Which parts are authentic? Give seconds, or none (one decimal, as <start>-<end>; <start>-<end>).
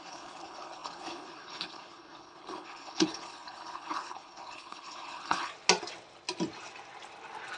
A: 5.5-7.6